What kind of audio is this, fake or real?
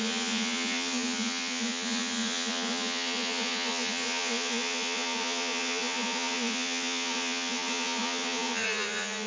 fake